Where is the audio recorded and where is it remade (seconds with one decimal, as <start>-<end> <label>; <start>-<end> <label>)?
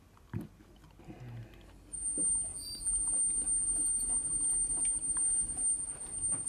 0.0-6.5 recorded